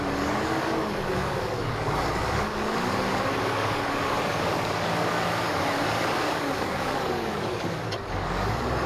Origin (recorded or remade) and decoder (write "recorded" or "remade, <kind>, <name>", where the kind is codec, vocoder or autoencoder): remade, codec, DAC